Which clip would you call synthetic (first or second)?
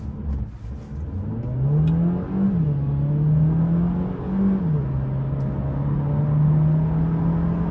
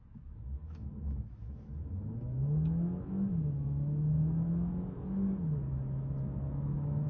second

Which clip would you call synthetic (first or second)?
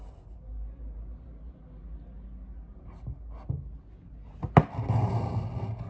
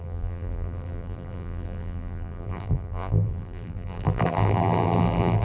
second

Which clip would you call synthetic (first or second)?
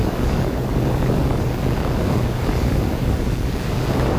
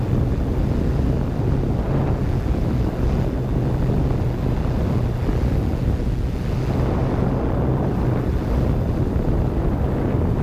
first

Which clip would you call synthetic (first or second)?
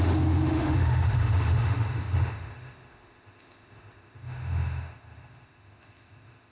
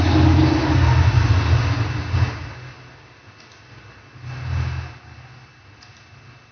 first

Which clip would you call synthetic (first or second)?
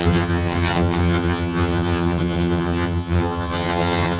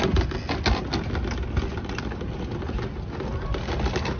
first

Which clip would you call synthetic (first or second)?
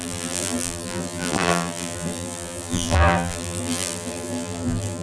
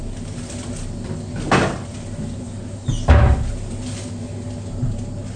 first